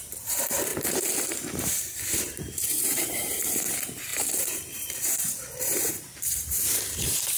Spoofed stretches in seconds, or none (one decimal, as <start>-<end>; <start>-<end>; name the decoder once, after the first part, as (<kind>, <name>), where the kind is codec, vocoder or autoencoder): 0.0-7.4 (vocoder, BigVGAN v2)